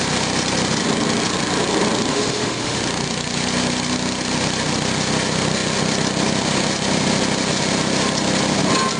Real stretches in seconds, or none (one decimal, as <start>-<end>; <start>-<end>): 0.0-2.1; 2.8-9.0